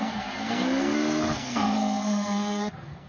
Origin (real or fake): fake